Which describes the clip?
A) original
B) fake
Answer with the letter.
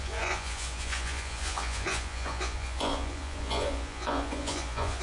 B